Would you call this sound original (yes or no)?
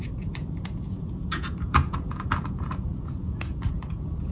no